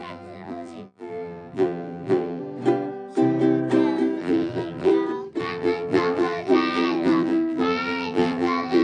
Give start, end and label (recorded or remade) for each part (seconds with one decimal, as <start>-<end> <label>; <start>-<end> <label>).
0.0-2.4 remade; 2.4-4.2 recorded; 4.2-4.9 remade; 4.9-5.4 recorded; 5.4-8.8 remade

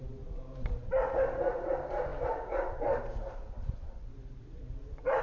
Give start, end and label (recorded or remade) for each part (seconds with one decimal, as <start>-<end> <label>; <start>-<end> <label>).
0.0-5.2 remade